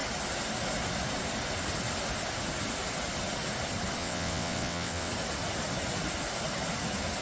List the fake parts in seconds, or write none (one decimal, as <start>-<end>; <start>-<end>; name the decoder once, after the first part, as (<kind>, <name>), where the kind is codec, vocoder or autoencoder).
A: 4.0-5.1 (vocoder, WaveNeXt)